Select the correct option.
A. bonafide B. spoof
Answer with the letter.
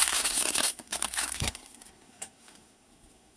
B